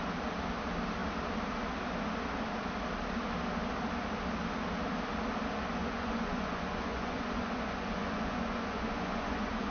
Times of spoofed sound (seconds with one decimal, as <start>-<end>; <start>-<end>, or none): 5.8-9.7